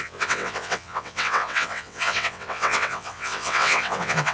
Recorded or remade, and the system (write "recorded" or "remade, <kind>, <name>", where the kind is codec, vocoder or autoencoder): remade, vocoder, WaveNeXt